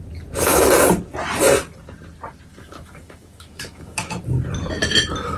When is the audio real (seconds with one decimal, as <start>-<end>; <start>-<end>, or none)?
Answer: 0.0-2.5; 4.2-5.4